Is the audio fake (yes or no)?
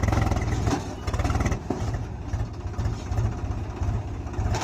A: no